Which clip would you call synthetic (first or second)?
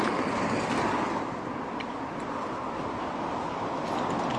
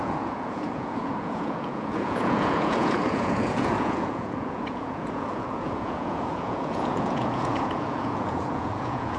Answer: second